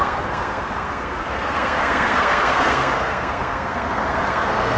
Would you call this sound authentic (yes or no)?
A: no